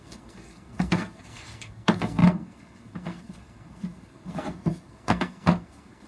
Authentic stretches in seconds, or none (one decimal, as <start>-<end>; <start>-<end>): none